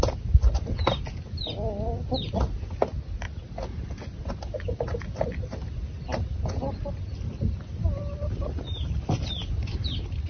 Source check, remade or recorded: recorded